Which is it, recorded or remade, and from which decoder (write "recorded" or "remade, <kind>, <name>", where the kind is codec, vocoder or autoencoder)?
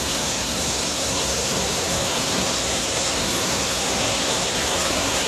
remade, codec, SNAC